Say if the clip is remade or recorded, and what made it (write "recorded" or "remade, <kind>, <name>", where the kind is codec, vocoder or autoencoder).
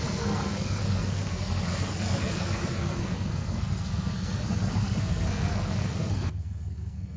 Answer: remade, codec, SNAC